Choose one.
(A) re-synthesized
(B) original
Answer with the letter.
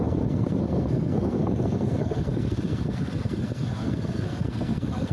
A